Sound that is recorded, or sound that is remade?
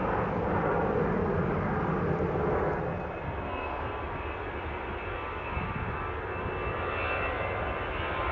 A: recorded